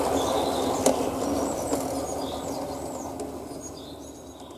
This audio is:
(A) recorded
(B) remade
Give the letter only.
A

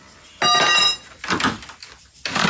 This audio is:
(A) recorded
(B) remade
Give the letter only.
A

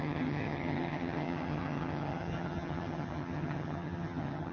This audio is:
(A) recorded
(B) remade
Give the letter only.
B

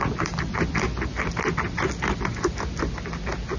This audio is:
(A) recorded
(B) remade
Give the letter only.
A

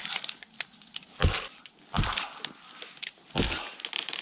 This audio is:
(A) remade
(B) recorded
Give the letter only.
B